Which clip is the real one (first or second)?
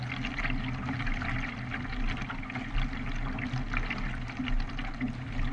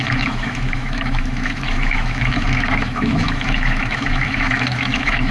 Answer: first